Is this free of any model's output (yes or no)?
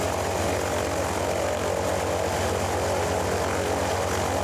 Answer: yes